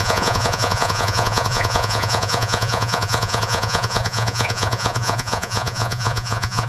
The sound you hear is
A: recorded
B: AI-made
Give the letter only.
B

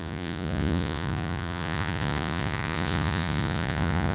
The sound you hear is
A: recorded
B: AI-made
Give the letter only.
B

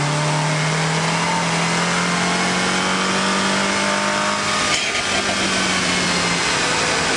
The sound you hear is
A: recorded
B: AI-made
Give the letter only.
A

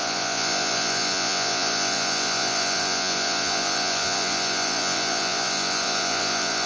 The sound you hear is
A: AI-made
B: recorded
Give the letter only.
A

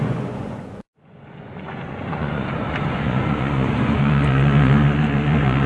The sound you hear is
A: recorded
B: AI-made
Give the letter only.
B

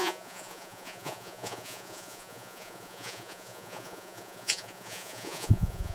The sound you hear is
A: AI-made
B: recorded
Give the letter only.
A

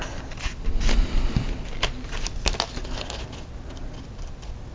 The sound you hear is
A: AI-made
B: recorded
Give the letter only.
B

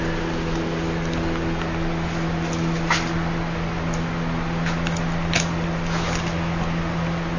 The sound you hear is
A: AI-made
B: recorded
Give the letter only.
B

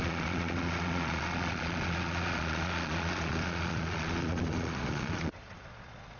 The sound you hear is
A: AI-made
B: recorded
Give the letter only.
A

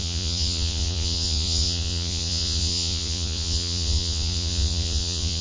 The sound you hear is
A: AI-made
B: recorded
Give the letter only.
A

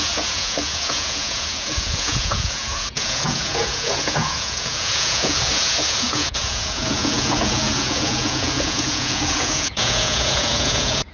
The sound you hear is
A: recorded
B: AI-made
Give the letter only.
B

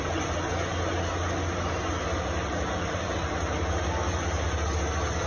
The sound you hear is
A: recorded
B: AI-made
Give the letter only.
A